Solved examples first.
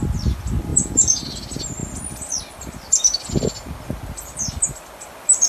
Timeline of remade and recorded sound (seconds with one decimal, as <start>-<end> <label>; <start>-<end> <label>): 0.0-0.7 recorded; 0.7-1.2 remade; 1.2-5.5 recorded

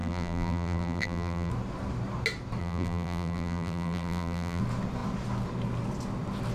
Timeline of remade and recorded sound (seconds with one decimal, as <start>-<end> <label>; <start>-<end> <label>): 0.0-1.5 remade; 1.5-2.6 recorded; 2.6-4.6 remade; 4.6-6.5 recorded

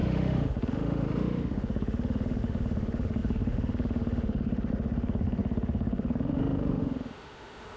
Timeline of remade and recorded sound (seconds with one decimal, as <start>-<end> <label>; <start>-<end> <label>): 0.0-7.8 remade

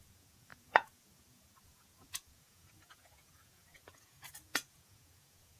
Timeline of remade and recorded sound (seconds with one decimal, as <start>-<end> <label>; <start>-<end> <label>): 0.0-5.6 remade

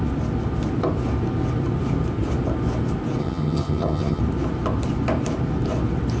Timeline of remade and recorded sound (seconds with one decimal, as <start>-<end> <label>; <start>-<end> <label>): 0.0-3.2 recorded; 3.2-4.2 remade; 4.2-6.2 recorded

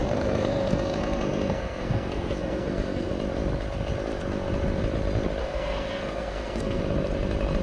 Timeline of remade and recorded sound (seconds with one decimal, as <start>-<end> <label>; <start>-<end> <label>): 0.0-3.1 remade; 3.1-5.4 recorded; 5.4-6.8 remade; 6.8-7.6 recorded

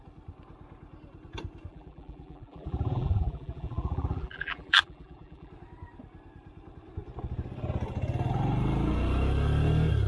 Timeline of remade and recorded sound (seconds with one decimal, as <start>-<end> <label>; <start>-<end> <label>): 0.0-1.7 recorded; 1.7-5.5 remade; 5.5-10.1 recorded

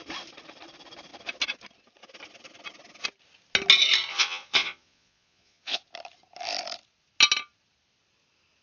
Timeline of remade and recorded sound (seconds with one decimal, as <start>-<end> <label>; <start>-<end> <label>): 0.0-4.1 recorded; 4.1-5.8 remade; 5.8-8.6 recorded